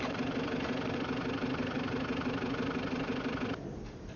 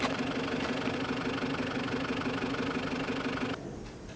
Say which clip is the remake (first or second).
first